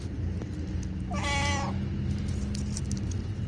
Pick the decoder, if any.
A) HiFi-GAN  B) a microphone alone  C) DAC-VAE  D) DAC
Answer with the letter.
B